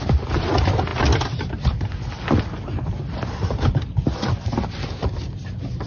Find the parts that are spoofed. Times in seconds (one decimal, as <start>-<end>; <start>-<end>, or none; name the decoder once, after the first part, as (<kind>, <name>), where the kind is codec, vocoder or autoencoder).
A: none